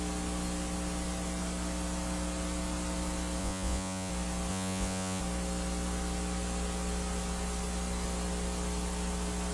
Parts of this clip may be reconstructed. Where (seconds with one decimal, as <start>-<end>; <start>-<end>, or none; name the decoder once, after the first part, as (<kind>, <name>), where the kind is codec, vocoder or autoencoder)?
3.4-4.1 (vocoder, Vocos); 4.5-5.2